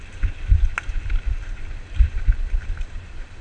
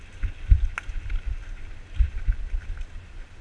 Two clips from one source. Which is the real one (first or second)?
second